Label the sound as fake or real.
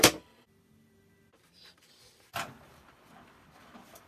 fake